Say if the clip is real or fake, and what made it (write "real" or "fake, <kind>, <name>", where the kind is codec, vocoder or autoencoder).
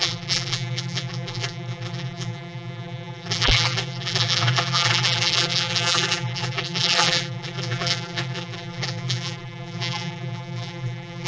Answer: fake, vocoder, BigVGAN v2